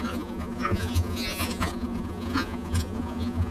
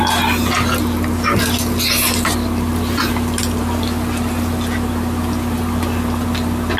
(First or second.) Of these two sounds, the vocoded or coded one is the first